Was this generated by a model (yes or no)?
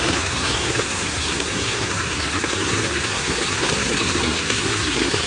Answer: yes